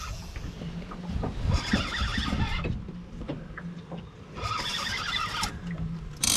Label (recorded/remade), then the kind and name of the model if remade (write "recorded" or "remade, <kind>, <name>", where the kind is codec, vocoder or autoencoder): recorded